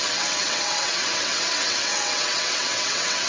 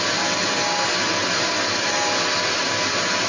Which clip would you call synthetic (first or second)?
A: first